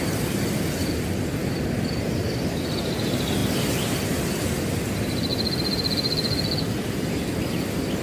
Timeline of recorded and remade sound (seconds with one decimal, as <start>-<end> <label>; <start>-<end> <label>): 0.0-1.4 recorded; 1.4-2.0 remade; 2.0-5.3 recorded; 5.3-8.0 remade